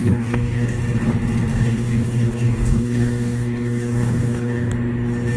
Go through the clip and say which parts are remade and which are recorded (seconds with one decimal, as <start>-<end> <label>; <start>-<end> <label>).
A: 0.0-0.8 remade; 0.8-1.5 recorded; 1.5-4.7 remade; 4.7-5.4 recorded